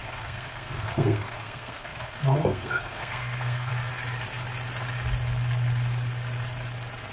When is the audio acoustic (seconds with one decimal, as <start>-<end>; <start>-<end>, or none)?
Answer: 3.7-7.1